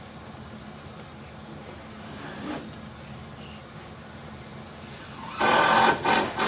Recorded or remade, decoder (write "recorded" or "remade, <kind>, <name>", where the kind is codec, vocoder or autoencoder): recorded